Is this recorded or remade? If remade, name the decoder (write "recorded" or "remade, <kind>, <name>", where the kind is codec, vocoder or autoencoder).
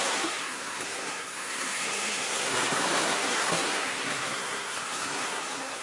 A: remade, codec, SNAC